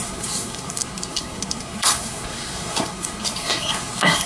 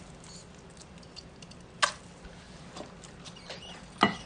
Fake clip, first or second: first